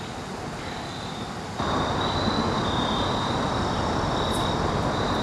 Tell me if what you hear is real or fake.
real